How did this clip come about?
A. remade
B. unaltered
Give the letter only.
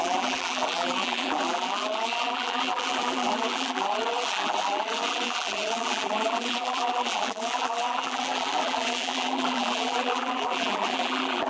A